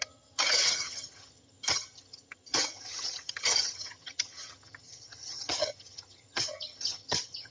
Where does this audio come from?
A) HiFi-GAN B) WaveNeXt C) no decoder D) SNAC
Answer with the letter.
A